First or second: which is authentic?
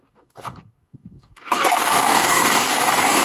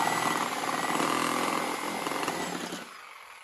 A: second